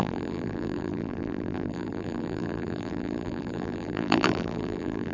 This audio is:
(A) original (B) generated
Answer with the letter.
B